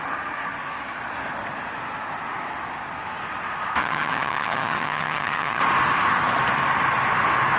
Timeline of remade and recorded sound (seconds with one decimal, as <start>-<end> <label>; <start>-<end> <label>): 0.0-3.8 recorded; 3.8-5.6 remade; 5.6-7.6 recorded